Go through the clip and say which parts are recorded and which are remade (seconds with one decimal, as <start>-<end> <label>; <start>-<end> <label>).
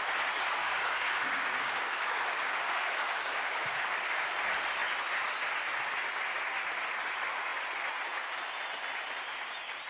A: 0.0-0.6 recorded; 0.6-3.6 remade; 3.6-9.9 recorded